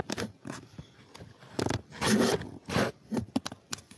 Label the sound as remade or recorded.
recorded